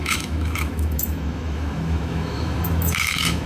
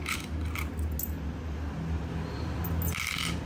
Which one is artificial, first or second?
first